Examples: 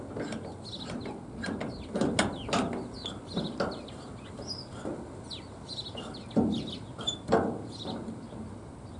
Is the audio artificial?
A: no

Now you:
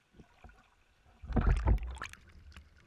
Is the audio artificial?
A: no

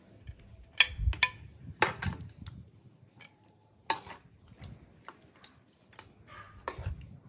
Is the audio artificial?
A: no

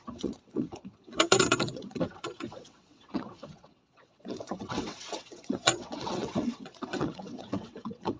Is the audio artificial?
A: yes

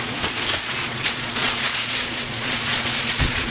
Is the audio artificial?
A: yes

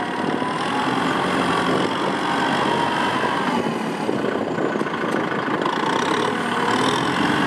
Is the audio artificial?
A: no